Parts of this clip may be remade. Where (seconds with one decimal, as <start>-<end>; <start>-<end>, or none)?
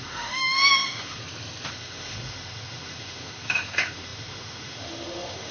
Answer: 0.0-1.2; 1.7-5.5